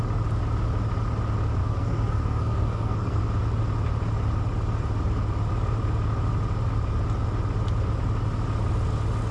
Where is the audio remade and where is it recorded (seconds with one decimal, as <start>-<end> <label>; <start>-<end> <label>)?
0.0-1.6 recorded; 1.6-3.2 remade; 3.2-9.3 recorded